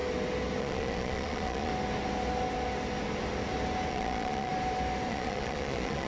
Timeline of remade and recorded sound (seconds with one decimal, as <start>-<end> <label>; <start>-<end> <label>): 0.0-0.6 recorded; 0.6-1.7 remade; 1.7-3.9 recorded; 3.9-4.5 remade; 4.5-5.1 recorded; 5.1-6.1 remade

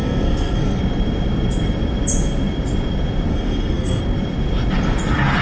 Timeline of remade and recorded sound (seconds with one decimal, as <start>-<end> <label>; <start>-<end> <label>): 0.0-0.8 remade; 0.8-3.3 recorded; 3.3-4.0 remade; 4.0-5.4 recorded

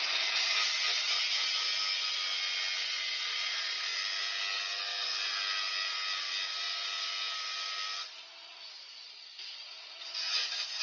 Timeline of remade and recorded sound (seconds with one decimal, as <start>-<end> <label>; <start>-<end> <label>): 0.0-10.8 recorded

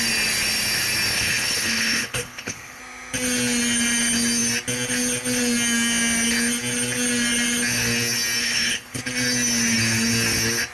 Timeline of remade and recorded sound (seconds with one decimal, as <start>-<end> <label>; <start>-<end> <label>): 0.0-1.1 recorded; 1.1-2.8 remade; 2.8-8.4 recorded; 8.4-9.0 remade; 9.0-10.7 recorded